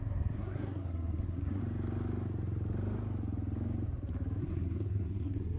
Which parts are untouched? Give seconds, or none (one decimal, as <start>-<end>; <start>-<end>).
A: 1.6-4.4